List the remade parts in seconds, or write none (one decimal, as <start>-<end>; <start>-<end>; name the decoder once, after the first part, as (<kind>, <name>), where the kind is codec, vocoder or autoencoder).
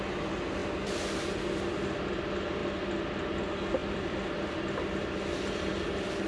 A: 3.8-4.6 (vocoder, BigVGAN v2)